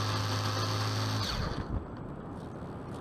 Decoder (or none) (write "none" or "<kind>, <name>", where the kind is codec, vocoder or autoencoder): none